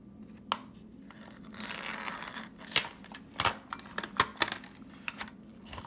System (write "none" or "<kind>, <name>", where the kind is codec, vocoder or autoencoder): none